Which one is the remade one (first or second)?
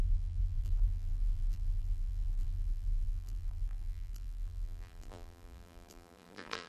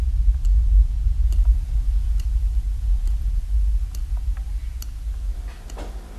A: first